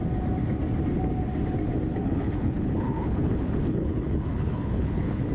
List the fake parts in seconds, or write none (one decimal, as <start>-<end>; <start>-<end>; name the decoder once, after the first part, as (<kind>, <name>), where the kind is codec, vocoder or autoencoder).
1.9-5.3 (codec, HILCodec)